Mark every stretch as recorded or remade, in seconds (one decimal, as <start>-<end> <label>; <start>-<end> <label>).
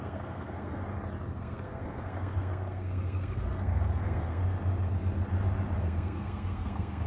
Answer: 0.0-0.8 remade; 0.8-1.4 recorded; 1.4-4.4 remade; 4.4-5.8 recorded; 5.8-7.1 remade